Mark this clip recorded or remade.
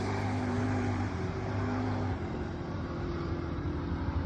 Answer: remade